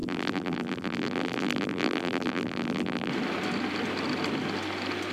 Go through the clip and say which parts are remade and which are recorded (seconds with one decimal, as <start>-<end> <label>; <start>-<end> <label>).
0.0-3.1 remade; 3.1-5.1 recorded